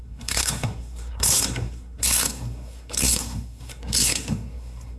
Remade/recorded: remade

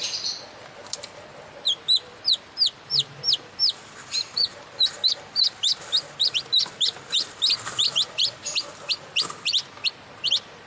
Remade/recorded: recorded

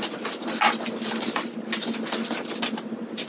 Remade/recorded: recorded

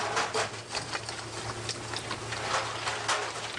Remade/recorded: recorded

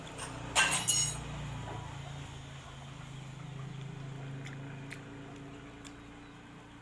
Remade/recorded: recorded